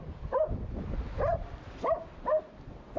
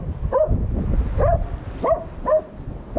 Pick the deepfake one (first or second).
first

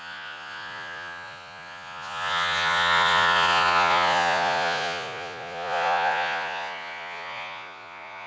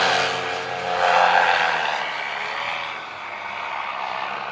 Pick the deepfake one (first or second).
first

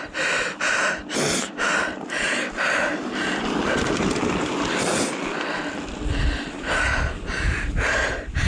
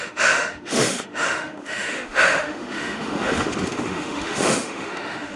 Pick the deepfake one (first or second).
second